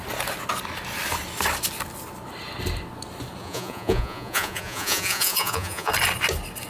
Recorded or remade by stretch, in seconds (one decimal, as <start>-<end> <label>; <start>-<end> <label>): 0.0-3.4 recorded; 3.4-5.9 remade; 5.9-6.7 recorded